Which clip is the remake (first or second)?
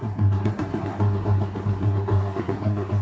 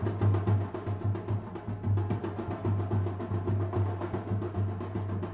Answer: first